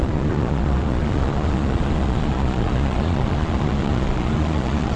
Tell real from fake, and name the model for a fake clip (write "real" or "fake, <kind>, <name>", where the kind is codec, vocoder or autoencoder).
fake, vocoder, Vocos